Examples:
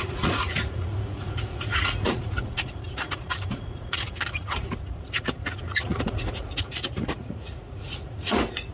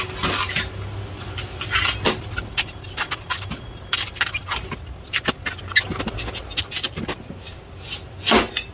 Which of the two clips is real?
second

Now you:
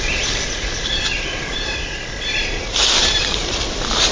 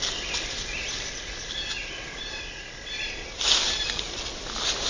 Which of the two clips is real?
second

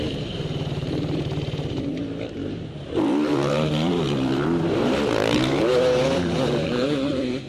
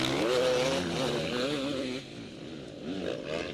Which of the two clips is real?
second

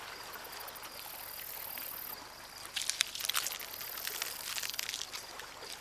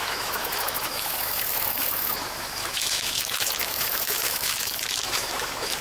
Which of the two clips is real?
first